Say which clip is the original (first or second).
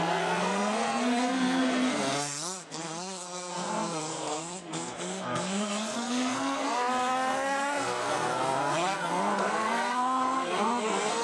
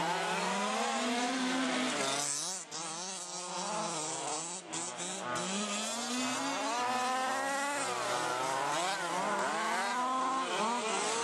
second